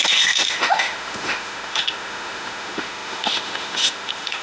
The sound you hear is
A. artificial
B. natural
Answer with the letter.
A